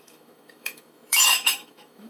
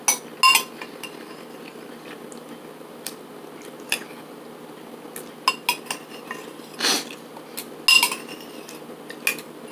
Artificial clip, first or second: first